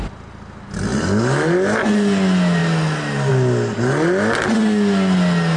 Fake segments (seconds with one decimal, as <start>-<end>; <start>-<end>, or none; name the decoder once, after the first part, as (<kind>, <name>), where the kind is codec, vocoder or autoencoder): none